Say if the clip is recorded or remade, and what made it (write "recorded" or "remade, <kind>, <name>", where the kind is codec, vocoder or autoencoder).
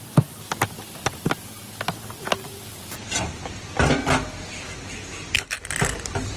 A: recorded